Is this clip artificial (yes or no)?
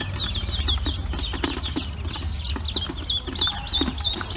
no